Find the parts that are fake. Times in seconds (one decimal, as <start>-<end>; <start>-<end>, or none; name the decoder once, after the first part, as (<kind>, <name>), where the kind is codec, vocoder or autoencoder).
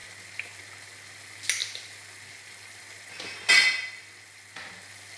none